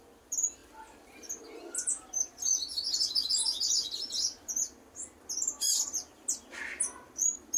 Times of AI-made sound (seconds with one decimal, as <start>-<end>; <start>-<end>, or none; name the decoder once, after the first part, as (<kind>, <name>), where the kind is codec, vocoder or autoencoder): none